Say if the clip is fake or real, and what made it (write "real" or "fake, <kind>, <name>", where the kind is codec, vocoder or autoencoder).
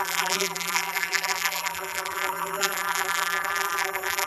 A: fake, vocoder, BigVGAN v2